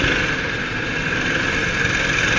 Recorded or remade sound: recorded